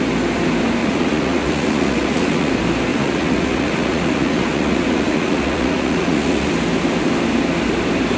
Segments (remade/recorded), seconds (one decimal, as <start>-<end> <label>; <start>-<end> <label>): 0.0-0.8 recorded; 0.8-2.5 remade; 2.5-2.9 recorded; 2.9-6.5 remade; 6.5-8.2 recorded

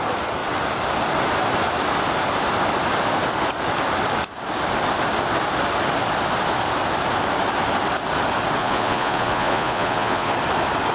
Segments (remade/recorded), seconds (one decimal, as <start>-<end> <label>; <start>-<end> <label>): 0.0-8.6 recorded; 8.6-10.3 remade; 10.3-10.9 recorded

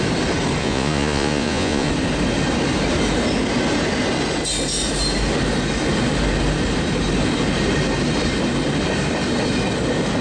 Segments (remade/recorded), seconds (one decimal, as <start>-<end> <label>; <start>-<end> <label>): 0.0-0.6 recorded; 0.6-1.9 remade; 1.9-10.2 recorded